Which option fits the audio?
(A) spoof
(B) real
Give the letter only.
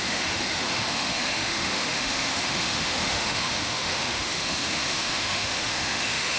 A